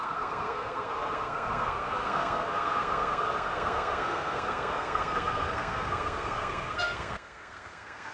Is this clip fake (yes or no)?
yes